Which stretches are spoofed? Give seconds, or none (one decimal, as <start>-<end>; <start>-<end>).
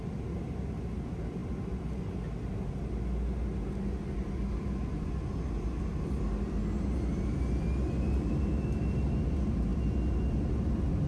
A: none